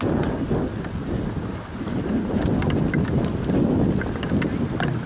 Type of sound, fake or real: real